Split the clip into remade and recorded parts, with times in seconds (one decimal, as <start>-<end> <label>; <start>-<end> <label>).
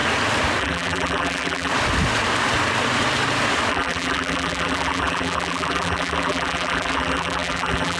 0.0-0.6 recorded; 0.6-1.7 remade; 1.7-3.7 recorded; 3.7-8.0 remade